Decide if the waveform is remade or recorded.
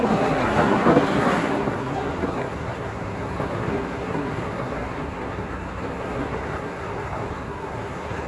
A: remade